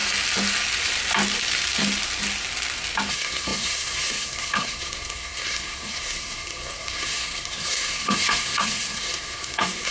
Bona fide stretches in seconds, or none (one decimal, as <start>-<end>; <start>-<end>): 0.0-3.1